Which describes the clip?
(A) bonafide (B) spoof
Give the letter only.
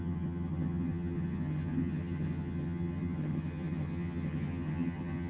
B